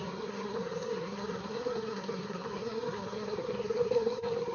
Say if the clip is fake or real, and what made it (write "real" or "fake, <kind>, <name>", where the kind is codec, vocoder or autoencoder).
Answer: fake, codec, SNAC